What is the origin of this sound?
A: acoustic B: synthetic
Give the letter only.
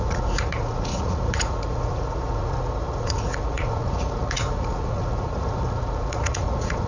B